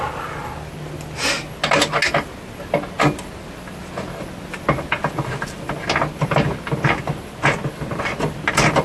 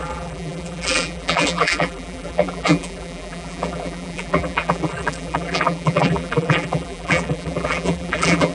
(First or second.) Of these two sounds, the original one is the first